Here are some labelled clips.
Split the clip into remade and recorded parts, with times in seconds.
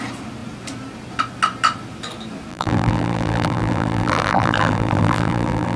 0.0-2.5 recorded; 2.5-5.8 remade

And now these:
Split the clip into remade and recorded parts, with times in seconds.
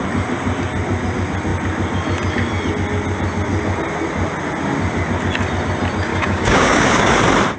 0.0-6.1 recorded; 6.1-7.1 remade; 7.1-7.6 recorded